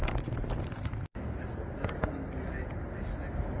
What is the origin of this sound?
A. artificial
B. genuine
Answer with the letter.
B